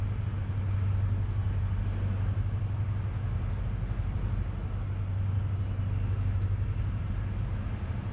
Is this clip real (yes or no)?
yes